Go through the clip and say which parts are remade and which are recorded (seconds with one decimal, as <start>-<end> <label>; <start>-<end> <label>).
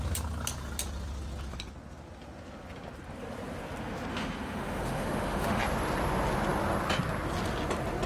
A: 0.0-4.1 recorded; 4.1-5.6 remade; 5.6-8.1 recorded